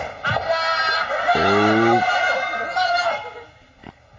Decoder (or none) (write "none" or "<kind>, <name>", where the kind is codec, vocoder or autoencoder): none